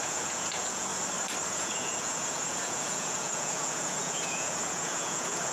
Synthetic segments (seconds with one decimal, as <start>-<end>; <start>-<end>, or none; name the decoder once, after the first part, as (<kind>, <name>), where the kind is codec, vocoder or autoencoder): 0.0-0.9 (vocoder, Vocos); 1.5-5.5